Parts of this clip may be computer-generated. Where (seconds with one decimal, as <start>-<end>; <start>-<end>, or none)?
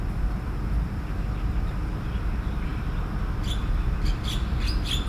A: none